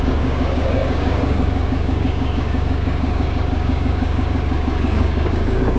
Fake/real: fake